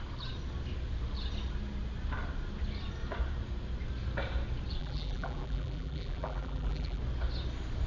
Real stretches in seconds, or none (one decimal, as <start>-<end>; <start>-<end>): 0.0-4.8; 7.0-7.9